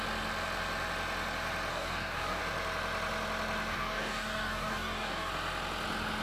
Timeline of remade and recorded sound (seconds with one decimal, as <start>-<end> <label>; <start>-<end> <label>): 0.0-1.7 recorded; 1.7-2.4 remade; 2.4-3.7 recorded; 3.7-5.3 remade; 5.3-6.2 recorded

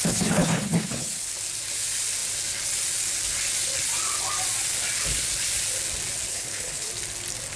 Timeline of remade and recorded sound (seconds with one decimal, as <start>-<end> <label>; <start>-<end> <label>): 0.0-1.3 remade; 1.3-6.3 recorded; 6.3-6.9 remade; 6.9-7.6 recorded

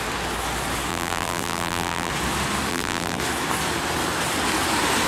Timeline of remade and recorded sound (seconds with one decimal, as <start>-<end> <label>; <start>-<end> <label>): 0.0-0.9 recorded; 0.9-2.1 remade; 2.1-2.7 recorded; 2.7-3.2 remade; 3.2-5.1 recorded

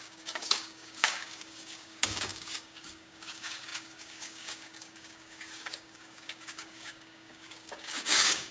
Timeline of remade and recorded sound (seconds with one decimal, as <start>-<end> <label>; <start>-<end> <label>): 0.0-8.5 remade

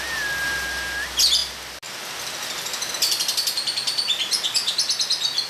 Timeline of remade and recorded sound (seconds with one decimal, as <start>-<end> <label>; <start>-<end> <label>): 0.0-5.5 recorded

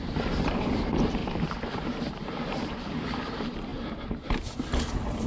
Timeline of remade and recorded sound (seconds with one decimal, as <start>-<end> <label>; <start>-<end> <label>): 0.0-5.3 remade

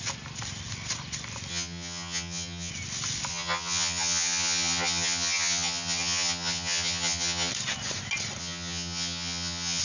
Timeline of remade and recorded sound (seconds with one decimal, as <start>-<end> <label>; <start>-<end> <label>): 0.0-1.5 recorded; 1.5-2.7 remade; 2.7-3.3 recorded; 3.3-7.5 remade; 7.5-8.4 recorded; 8.4-9.8 remade

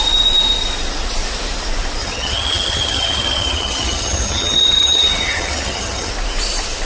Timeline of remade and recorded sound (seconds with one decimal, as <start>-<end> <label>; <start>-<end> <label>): 0.0-2.0 recorded; 2.0-6.1 remade; 6.1-6.9 recorded